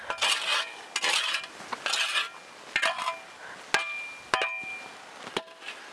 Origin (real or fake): real